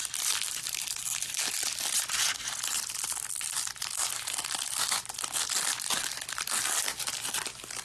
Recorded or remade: recorded